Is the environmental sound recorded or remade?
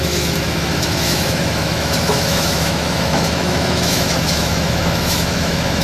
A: remade